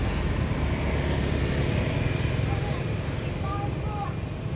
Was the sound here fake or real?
real